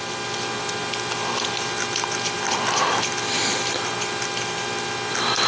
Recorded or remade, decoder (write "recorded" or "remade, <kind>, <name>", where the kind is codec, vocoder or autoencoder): recorded